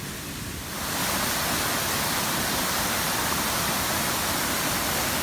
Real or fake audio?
real